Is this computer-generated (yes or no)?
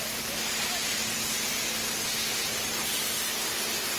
no